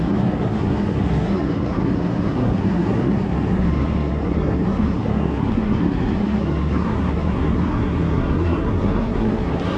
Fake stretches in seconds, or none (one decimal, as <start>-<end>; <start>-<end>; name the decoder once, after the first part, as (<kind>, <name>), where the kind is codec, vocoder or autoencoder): 0.0-9.8 (codec, SNAC)